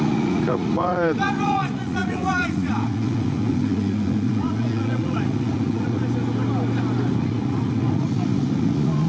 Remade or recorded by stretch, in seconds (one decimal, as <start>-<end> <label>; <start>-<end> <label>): 0.0-6.0 remade; 6.0-7.1 recorded; 7.1-9.1 remade